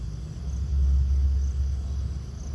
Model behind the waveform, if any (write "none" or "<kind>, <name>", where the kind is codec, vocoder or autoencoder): none